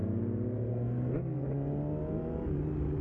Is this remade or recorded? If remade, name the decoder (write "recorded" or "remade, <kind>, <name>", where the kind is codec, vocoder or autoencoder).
recorded